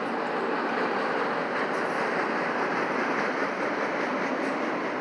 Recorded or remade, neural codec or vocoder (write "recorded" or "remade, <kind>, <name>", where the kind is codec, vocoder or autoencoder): recorded